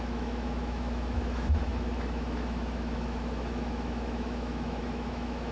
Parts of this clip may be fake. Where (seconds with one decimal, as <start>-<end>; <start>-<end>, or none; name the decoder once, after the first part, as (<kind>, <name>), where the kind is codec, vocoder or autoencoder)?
0.0-5.5 (autoencoder, DAC-VAE)